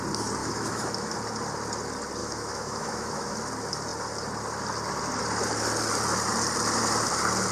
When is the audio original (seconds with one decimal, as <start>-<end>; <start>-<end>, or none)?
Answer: 0.0-0.4; 1.1-2.2; 3.3-7.5